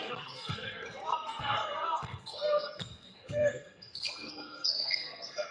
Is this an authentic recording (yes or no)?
no